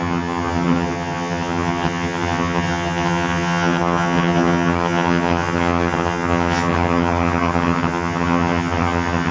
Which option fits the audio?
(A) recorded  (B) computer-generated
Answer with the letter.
B